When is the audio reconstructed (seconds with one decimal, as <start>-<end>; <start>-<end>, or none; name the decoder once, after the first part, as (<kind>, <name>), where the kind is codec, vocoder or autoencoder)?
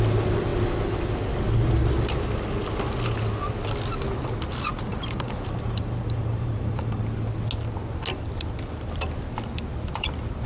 4.9-7.0 (vocoder, BigVGAN v2)